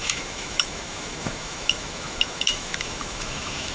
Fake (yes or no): yes